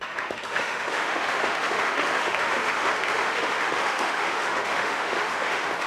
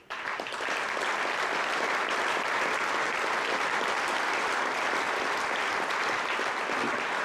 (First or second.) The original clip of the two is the second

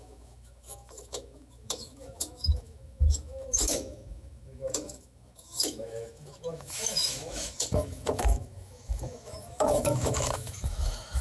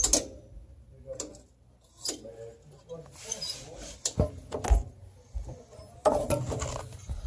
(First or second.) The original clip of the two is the second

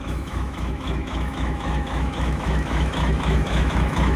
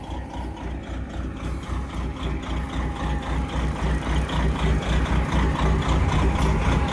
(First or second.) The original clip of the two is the second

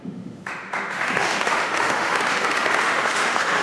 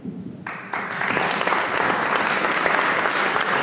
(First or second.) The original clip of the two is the second